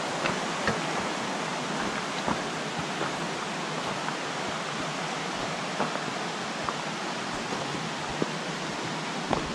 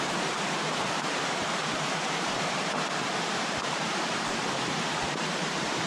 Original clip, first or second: first